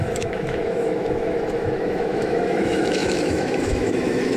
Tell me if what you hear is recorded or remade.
remade